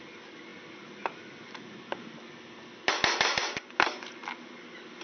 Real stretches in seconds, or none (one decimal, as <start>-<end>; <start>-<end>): 0.0-5.0

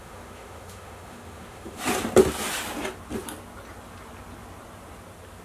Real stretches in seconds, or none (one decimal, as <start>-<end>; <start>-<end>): 1.8-5.4